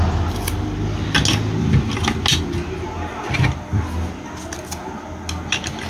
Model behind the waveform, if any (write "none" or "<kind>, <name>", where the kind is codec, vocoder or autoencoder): none